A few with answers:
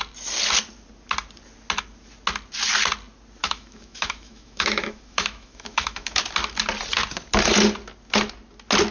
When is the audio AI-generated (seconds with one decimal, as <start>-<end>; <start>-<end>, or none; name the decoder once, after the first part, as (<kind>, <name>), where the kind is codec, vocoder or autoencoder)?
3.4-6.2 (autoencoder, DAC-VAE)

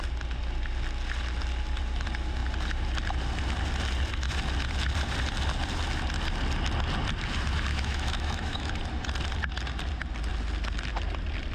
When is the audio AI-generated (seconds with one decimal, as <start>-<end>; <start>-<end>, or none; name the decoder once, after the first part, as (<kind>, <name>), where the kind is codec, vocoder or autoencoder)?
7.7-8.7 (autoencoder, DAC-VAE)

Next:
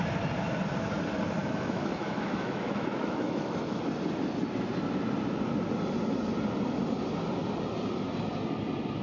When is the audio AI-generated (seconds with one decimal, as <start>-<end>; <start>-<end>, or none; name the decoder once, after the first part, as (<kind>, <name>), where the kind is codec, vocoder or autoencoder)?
1.4-3.8 (autoencoder, DAC-VAE)

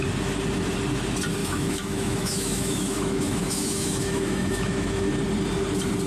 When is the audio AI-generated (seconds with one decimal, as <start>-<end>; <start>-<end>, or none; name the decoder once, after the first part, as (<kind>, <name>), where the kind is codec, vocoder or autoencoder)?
1.4-5.1 (autoencoder, DAC-VAE)

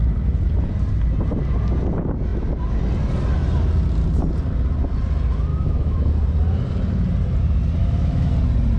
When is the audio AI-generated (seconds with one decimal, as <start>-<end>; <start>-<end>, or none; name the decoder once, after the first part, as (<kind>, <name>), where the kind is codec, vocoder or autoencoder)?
5.5-6.1 (autoencoder, DAC-VAE); 7.8-8.3

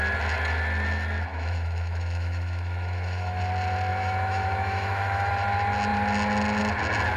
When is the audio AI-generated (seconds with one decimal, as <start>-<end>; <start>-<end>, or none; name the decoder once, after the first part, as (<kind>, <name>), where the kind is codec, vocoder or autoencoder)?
1.3-3.4 (autoencoder, DAC-VAE); 3.9-5.3

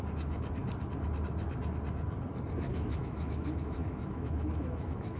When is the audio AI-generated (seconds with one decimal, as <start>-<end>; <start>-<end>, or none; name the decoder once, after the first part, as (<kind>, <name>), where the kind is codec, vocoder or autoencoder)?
2.7-5.2 (autoencoder, DAC-VAE)